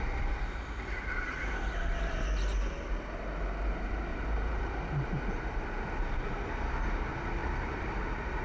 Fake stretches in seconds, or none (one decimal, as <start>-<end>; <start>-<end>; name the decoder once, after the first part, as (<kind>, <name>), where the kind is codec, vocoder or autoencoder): 4.1-5.4 (vocoder, BigVGAN v2); 7.4-8.0